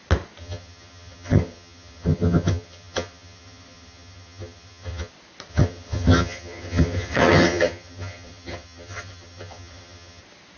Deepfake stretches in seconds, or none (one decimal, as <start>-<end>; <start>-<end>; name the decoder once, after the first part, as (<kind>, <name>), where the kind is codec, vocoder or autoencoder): 0.4-5.1 (vocoder, HiFi-GAN); 5.5-10.2